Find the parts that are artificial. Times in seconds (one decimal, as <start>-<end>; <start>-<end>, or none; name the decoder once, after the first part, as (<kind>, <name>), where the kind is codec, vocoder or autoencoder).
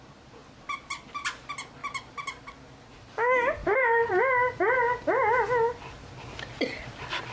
1.8-2.5 (vocoder, BigVGAN v2); 3.6-4.2